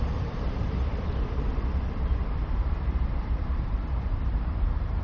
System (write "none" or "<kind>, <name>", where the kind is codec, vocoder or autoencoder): vocoder, BigVGAN v2